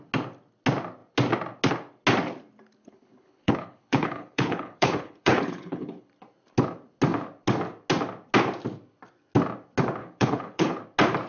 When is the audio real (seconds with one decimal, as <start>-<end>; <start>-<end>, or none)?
0.0-2.8; 6.1-10.0; 10.8-11.3